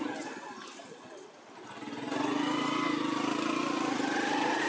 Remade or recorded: recorded